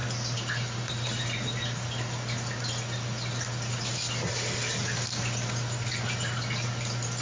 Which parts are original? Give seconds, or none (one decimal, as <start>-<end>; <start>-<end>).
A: 0.0-7.2